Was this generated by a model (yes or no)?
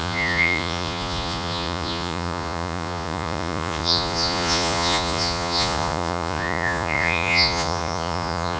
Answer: yes